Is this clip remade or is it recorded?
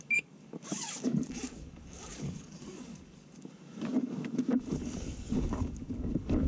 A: remade